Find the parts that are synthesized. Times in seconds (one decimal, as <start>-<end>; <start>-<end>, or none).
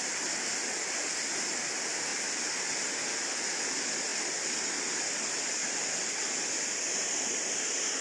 none